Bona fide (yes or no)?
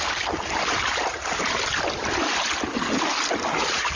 yes